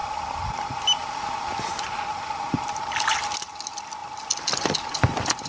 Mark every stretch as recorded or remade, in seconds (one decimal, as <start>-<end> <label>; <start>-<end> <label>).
0.0-5.5 recorded